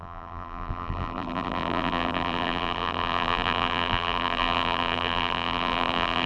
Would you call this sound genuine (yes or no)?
no